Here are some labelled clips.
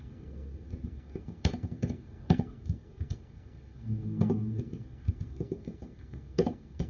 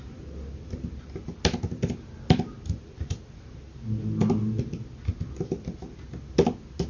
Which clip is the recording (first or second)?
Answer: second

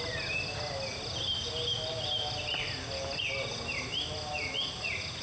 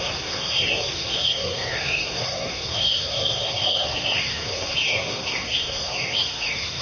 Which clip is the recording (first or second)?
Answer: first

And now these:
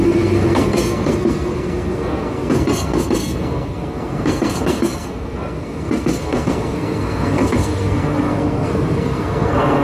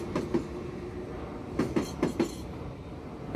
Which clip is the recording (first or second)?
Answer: second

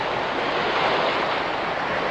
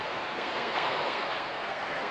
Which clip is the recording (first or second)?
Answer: first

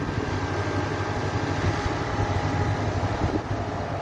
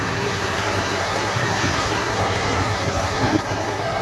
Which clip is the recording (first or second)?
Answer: first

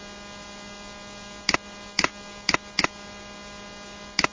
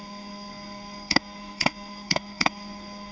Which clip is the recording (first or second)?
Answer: first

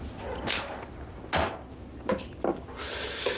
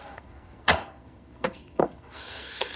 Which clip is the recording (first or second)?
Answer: first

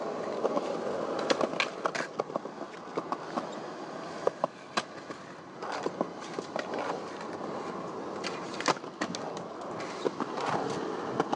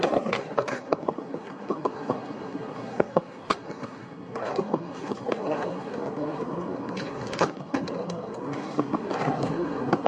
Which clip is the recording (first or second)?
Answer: first